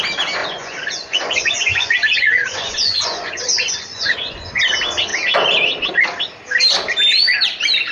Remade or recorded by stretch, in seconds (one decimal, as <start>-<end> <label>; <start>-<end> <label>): 0.0-0.4 recorded; 0.4-4.6 remade; 4.6-7.9 recorded

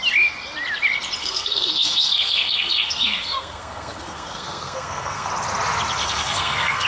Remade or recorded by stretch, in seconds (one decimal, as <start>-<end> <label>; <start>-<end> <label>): 0.0-1.2 recorded; 1.2-5.3 remade; 5.3-6.0 recorded; 6.0-6.9 remade